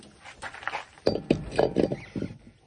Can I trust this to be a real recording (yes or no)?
yes